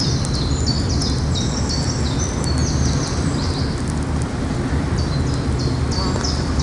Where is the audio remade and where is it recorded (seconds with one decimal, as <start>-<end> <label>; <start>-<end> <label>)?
0.0-6.6 recorded